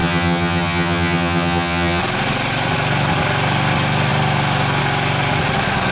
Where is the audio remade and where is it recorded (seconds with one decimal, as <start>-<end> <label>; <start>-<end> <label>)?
0.0-2.0 remade; 2.0-5.9 recorded